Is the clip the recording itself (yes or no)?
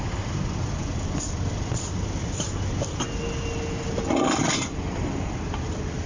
yes